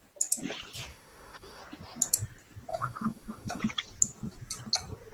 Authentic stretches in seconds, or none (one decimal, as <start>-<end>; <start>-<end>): 0.0-0.9; 1.6-2.7; 3.6-5.1